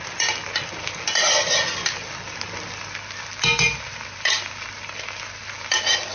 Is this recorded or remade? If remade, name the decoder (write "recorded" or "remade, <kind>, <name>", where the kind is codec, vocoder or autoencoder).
recorded